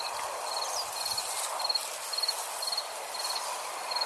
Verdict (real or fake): real